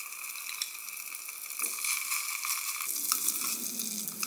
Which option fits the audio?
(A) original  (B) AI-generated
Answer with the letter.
A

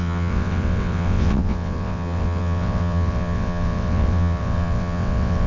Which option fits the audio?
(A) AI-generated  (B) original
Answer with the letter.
A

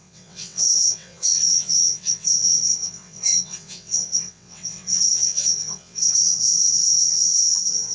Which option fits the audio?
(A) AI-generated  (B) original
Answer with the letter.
A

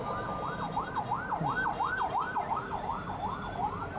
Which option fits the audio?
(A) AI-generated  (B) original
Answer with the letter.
B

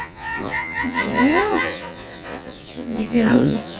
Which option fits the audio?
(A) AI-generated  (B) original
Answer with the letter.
A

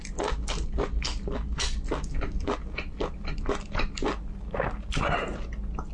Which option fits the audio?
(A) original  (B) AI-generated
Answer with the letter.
A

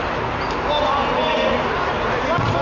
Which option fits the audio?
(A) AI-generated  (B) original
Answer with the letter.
B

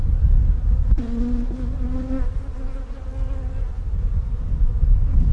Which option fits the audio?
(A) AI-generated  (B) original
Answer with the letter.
B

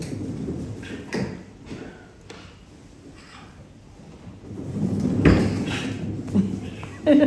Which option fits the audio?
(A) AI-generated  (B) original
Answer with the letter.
B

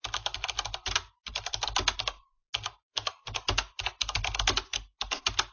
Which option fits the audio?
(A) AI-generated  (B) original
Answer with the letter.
B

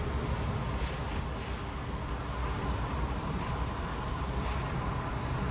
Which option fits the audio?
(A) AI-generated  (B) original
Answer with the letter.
B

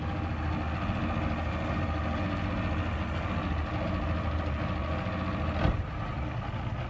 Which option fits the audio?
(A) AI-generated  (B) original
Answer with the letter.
B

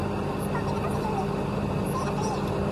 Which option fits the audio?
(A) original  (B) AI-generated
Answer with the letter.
A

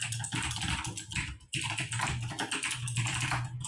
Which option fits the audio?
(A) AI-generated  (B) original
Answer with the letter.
B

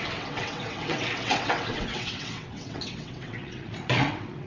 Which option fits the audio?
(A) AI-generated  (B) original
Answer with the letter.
A